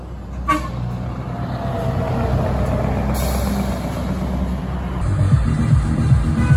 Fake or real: real